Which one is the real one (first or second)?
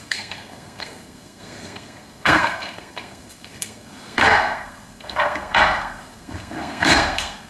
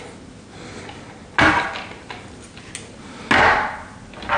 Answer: second